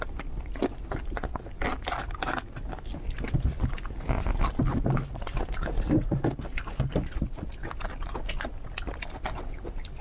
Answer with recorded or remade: recorded